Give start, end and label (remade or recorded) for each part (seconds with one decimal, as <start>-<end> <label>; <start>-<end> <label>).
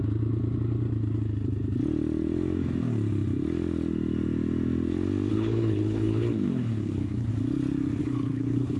0.0-5.3 recorded; 5.3-7.3 remade; 7.3-8.0 recorded; 8.0-8.8 remade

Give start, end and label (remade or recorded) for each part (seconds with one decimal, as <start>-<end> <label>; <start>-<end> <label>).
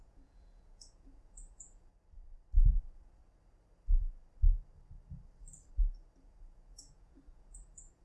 0.0-1.9 remade; 1.9-2.6 recorded; 2.6-3.2 remade; 3.2-6.2 recorded; 6.2-8.0 remade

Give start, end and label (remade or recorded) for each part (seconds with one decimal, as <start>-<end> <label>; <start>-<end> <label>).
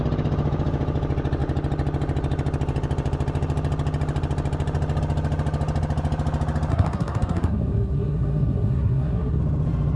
0.0-6.7 recorded; 6.7-9.4 remade; 9.4-10.0 recorded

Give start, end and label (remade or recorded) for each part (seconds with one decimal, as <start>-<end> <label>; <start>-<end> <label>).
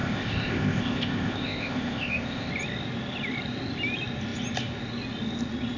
0.0-2.5 remade; 2.5-5.8 recorded